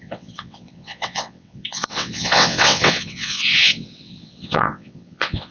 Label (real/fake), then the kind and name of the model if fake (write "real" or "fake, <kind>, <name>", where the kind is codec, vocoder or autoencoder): fake, vocoder, WaveNeXt